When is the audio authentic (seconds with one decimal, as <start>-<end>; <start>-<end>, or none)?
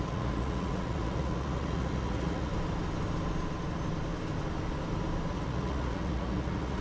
2.5-5.3